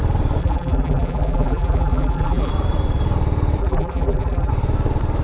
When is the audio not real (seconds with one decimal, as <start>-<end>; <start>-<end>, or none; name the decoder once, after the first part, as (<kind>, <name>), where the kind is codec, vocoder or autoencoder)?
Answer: 0.4-2.5 (vocoder, BigVGAN v2); 3.6-4.5